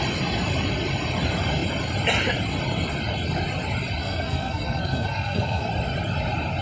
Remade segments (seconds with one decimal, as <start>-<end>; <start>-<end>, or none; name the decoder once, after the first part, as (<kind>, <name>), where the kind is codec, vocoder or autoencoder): 4.0-5.7 (codec, SNAC)